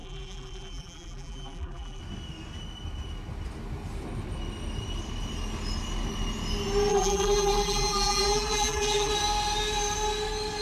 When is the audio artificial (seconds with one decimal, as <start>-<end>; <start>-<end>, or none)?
0.0-2.0; 6.9-9.1